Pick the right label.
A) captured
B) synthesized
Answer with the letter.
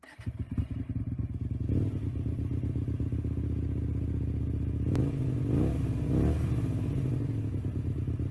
A